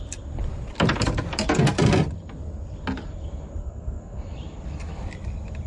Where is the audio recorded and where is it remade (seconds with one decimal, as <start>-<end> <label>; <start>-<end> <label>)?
0.0-3.6 recorded; 3.6-4.2 remade; 4.2-5.7 recorded